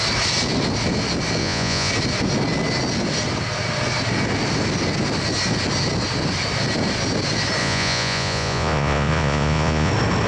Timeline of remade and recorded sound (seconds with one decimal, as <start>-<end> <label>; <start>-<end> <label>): 0.0-1.4 recorded; 1.4-1.9 remade; 1.9-7.6 recorded; 7.6-9.9 remade; 9.9-10.3 recorded